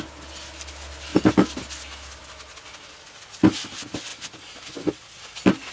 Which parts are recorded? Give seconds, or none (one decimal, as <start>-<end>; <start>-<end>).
0.0-5.7